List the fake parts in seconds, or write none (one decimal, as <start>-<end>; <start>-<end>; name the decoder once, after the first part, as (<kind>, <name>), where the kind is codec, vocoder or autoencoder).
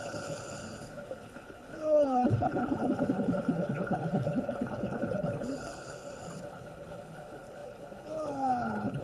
0.0-9.0 (codec, HILCodec)